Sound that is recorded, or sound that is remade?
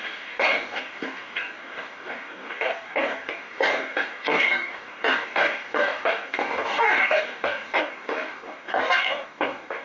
remade